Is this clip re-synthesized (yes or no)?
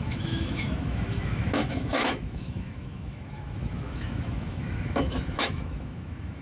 yes